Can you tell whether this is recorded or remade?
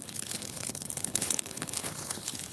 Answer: remade